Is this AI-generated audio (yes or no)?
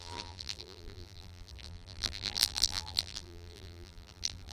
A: yes